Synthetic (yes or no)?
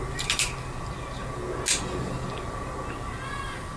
no